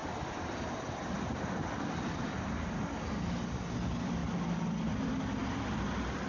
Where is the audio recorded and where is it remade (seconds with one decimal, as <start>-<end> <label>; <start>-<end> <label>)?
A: 0.0-6.3 recorded